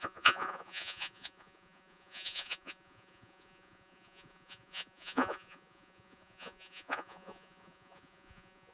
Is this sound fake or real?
fake